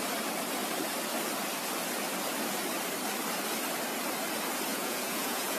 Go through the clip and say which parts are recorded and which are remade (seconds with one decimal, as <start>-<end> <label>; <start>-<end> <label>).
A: 0.0-4.7 recorded; 4.7-5.6 remade